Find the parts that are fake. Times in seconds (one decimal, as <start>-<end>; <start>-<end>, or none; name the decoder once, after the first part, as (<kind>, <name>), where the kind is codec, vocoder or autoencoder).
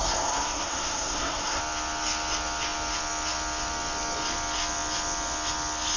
0.0-1.6 (codec, SNAC)